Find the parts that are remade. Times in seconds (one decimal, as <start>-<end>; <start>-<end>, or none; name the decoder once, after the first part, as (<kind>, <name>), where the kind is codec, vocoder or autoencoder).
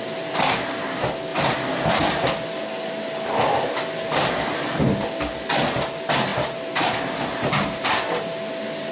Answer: none